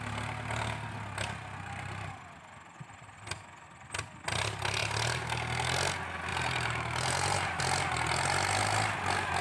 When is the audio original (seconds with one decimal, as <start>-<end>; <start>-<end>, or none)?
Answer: 0.0-1.4; 2.1-6.3; 7.6-9.4

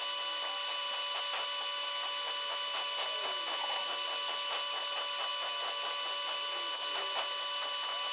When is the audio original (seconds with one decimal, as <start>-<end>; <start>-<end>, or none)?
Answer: 0.0-8.1

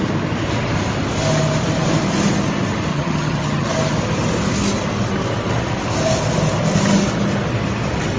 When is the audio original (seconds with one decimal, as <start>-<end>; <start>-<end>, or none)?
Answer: 0.0-2.9; 3.7-8.2

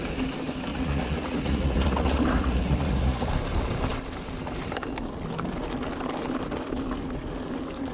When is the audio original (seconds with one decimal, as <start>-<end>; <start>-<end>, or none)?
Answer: 0.0-0.7; 3.3-7.9

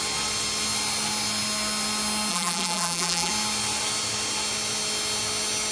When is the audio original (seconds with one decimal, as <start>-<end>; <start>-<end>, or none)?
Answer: 0.0-2.3; 3.3-5.7

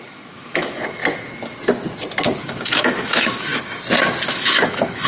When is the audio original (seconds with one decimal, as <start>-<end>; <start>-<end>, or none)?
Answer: 1.0-2.4; 3.5-4.3

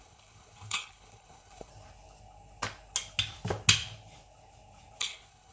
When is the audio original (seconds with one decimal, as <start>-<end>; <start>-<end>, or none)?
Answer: 1.7-5.0

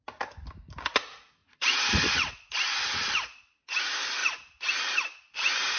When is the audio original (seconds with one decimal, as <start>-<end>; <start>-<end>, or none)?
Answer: 0.0-1.4; 2.5-5.8